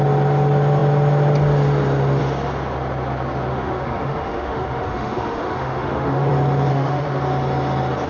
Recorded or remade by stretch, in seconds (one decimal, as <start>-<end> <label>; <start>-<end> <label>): 0.0-3.5 recorded; 3.5-6.3 remade; 6.3-6.7 recorded; 6.7-7.2 remade; 7.2-8.1 recorded

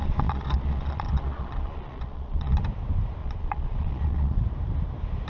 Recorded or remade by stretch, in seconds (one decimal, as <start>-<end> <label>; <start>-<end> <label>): 0.0-2.6 remade; 2.6-3.2 recorded; 3.2-4.4 remade; 4.4-5.3 recorded

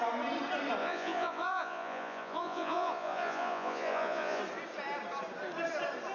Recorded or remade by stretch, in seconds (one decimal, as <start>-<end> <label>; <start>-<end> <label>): 0.0-0.8 recorded; 0.8-4.4 remade; 4.4-6.1 recorded

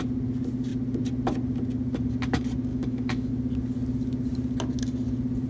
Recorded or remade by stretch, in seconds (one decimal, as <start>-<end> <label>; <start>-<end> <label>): 0.0-2.7 recorded; 2.7-3.3 remade; 3.3-5.5 recorded

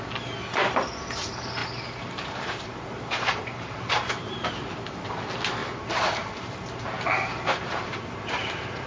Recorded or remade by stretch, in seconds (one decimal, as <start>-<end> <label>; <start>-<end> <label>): 0.0-1.6 recorded; 1.6-4.5 remade; 4.5-5.6 recorded; 5.6-8.9 remade

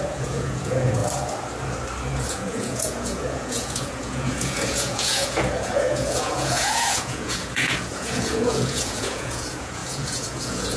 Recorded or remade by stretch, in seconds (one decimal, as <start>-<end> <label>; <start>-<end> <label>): 0.0-1.0 remade; 1.0-2.3 recorded; 2.3-10.8 remade

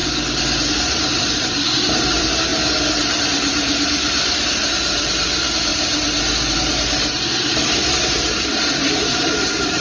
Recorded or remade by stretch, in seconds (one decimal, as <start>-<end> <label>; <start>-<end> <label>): 0.0-0.6 recorded; 0.6-2.5 remade; 2.5-3.3 recorded; 3.3-9.8 remade